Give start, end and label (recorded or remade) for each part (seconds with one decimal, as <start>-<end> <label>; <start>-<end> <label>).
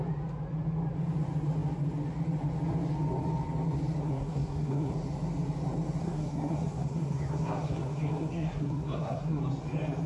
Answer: 0.0-4.0 recorded; 4.0-4.9 remade; 4.9-6.0 recorded; 6.0-9.4 remade; 9.4-10.1 recorded